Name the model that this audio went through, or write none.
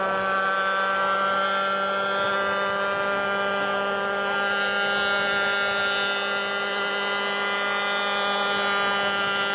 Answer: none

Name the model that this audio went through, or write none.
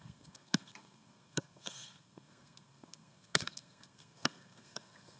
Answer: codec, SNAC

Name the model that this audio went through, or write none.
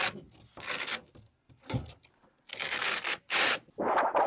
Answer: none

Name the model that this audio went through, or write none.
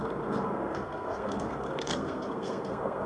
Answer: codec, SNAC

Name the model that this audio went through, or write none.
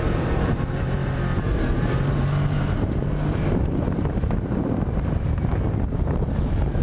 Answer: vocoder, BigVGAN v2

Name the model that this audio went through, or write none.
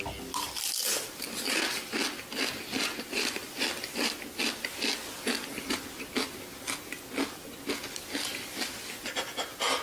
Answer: none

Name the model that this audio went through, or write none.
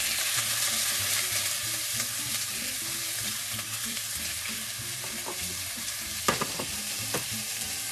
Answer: vocoder, BigVGAN v2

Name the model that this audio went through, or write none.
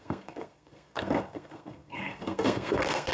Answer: codec, SNAC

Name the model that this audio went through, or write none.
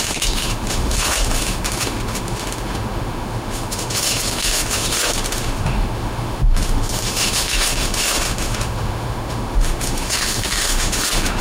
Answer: autoencoder, DAC-VAE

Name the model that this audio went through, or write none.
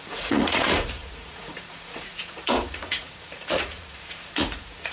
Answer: vocoder, Vocos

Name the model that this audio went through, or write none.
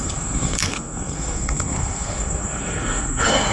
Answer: codec, SNAC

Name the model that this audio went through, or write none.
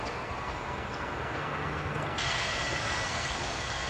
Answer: codec, SNAC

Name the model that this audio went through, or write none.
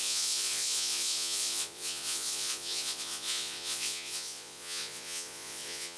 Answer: vocoder, Vocos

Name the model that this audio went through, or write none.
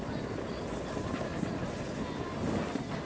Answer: none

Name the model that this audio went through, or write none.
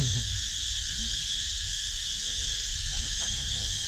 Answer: codec, SNAC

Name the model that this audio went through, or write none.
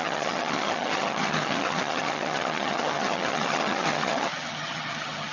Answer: vocoder, HiFi-GAN